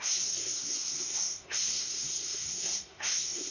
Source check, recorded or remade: remade